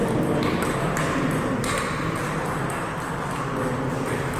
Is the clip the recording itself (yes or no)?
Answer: yes